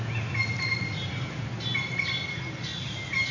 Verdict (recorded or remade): recorded